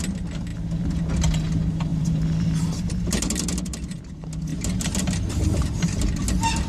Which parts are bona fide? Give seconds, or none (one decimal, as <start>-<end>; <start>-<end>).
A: 0.0-1.9; 4.0-4.5; 6.2-6.7